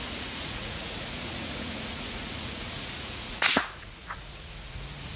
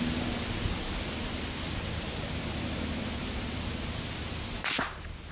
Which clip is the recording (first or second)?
second